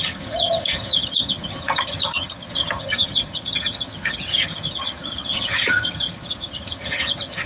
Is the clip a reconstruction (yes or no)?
yes